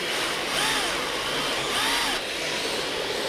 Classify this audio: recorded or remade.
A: recorded